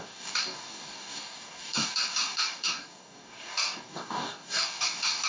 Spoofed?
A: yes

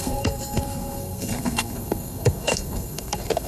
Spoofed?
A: yes